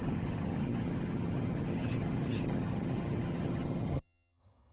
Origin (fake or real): fake